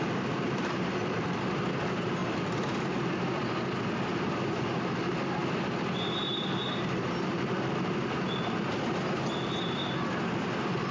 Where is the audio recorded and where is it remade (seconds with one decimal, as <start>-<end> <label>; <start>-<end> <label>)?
0.0-10.9 recorded